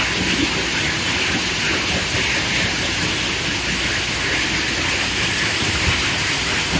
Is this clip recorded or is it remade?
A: recorded